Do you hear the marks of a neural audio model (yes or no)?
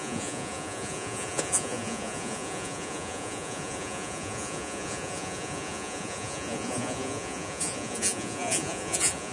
yes